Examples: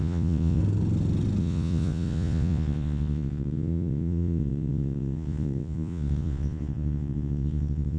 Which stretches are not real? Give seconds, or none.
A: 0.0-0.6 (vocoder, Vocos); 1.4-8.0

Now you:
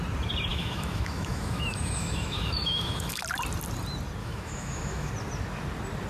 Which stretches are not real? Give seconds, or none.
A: 0.5-3.2 (autoencoder, DAC-VAE); 4.2-5.1

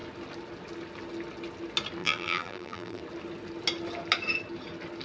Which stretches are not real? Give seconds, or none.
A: 2.0-3.0 (vocoder, BigVGAN v2)

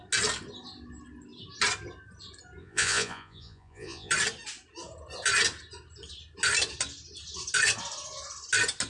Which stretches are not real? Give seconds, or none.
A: 2.6-4.1 (vocoder, Vocos)

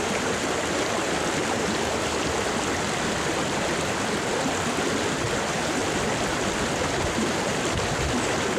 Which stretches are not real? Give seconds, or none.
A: 1.4-2.2 (vocoder, BigVGAN v2); 5.8-7.4

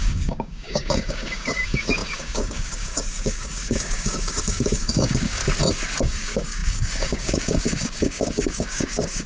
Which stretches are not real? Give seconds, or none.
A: 0.0-5.4 (codec, DAC); 6.0-9.3

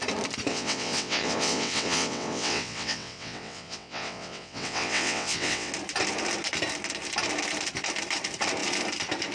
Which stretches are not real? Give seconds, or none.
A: 0.5-5.7 (vocoder, WaveNeXt)